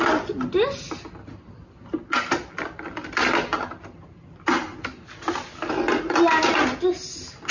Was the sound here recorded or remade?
recorded